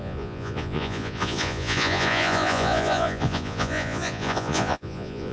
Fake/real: fake